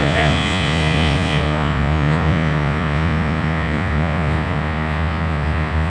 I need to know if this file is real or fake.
fake